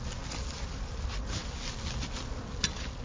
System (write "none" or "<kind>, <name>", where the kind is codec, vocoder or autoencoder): none